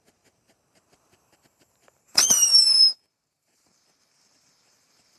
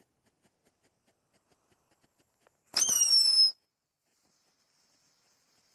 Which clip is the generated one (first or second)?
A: first